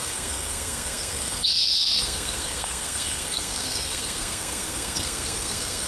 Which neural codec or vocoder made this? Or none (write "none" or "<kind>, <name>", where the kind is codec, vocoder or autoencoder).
codec, SNAC